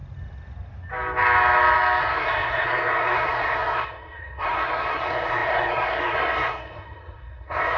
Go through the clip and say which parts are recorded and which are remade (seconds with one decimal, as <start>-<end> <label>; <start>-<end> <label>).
0.0-2.0 recorded; 2.0-7.8 remade